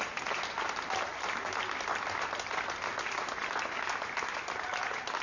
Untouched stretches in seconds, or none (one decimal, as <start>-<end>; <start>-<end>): 0.0-5.2